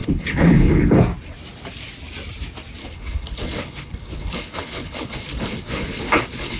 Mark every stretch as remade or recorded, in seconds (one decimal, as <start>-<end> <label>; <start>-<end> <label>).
0.0-1.0 remade; 1.0-2.8 recorded; 2.8-6.6 remade